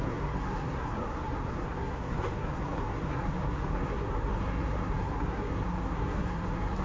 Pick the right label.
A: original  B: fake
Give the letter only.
B